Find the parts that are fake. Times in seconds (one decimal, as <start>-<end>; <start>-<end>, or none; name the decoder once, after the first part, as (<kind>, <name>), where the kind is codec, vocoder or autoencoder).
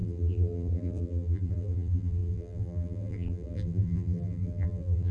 0.0-5.1 (vocoder, BigVGAN v2)